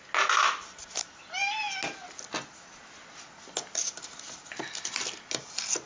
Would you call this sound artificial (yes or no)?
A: no